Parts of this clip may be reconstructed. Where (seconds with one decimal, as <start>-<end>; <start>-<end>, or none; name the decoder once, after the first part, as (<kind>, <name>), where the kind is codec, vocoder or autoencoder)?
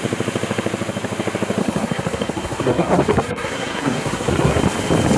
1.6-4.6 (codec, SNAC)